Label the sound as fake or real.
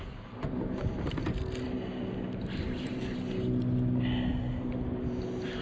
real